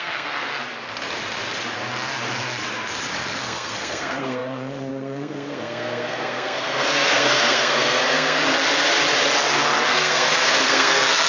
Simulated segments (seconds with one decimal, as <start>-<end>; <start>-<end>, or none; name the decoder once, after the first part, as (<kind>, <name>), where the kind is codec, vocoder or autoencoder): 0.0-0.5 (codec, SNAC); 3.4-8.4; 9.9-11.3

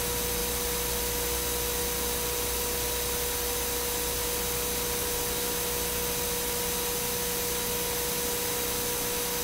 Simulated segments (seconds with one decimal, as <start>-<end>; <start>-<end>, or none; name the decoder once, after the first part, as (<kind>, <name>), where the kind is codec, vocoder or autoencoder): none

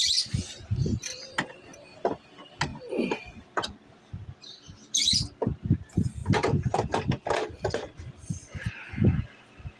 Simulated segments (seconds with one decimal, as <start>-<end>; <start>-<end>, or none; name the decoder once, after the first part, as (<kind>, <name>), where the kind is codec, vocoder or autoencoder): 6.2-7.6 (vocoder, BigVGAN v2)

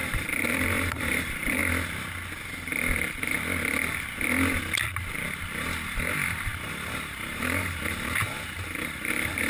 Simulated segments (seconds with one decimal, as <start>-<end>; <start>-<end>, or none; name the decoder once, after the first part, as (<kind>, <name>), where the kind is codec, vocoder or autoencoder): 0.0-1.6 (vocoder, BigVGAN v2); 6.7-9.5

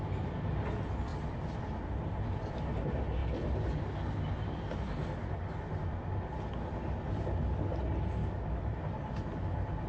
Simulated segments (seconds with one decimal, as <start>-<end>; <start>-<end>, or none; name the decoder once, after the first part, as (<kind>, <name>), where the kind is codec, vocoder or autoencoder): 8.2-8.8 (autoencoder, DAC-VAE)

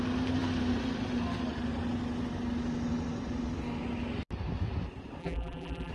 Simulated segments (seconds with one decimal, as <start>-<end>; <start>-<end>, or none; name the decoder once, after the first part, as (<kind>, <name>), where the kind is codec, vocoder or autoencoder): 5.2-5.9 (vocoder, BigVGAN v2)

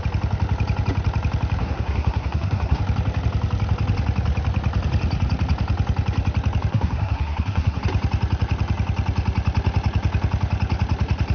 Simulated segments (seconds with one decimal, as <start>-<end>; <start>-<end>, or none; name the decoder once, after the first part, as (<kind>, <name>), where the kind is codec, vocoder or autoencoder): 1.6-2.8 (codec, SNAC); 6.7-7.8

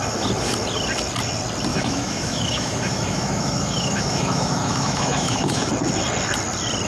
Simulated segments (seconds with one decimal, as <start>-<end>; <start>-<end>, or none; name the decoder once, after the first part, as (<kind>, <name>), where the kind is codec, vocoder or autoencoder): 1.7-5.7 (autoencoder, DAC-VAE)